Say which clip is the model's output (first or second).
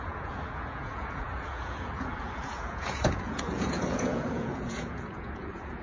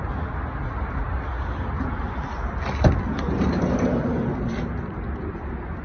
first